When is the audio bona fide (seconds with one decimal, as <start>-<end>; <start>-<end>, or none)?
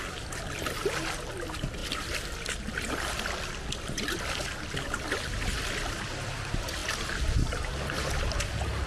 0.0-8.9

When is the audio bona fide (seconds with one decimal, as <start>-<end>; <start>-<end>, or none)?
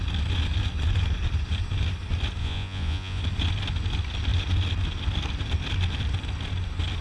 0.0-2.4; 3.2-7.0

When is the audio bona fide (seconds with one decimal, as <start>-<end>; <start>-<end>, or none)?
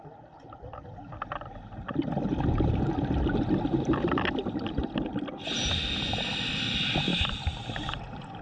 0.0-8.4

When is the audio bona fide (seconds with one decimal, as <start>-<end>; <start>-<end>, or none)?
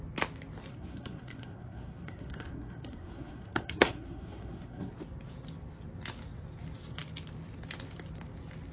0.0-0.7; 4.9-8.7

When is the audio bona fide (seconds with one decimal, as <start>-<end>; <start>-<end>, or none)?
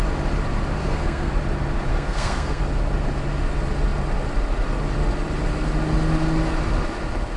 0.0-0.8; 1.3-1.9; 2.6-7.4